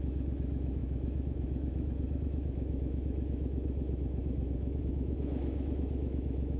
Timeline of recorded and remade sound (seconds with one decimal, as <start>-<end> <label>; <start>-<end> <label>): 0.0-6.6 remade